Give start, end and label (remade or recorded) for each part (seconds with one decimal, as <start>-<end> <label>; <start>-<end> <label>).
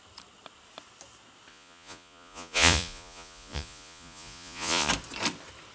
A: 0.0-1.5 recorded; 1.5-4.9 remade; 4.9-5.7 recorded